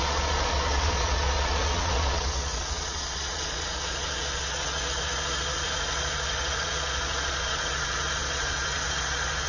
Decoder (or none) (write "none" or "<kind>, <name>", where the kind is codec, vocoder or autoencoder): vocoder, Vocos